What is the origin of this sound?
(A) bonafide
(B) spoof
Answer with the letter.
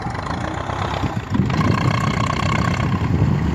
A